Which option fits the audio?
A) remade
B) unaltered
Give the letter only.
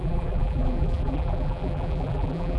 A